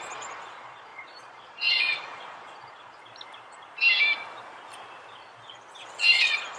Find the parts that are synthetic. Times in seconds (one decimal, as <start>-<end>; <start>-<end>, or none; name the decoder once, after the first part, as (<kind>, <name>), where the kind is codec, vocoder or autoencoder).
0.0-3.0 (vocoder, Vocos); 5.7-6.6